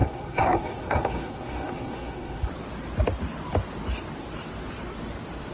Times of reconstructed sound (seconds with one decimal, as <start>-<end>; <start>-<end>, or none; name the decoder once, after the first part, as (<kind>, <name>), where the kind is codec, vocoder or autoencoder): 0.0-2.5 (codec, SNAC)